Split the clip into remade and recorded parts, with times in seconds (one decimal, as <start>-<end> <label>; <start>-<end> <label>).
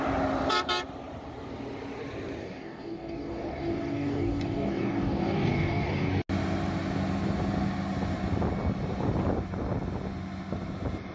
0.0-2.4 recorded; 2.4-6.1 remade; 6.1-11.1 recorded